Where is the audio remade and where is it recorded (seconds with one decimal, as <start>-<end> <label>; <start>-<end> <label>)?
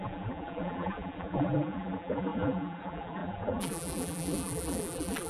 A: 0.0-5.3 remade